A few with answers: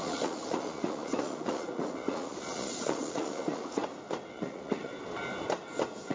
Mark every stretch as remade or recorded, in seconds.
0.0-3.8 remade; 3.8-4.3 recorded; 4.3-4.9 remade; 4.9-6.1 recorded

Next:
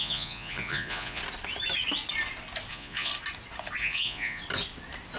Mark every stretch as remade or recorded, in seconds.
0.0-1.2 remade; 1.2-2.7 recorded; 2.7-3.1 remade; 3.1-3.8 recorded; 3.8-4.4 remade; 4.4-5.2 recorded